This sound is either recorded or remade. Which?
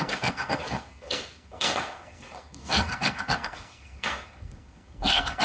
remade